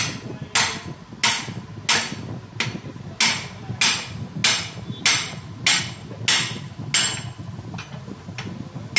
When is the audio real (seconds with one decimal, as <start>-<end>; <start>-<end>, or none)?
0.0-9.0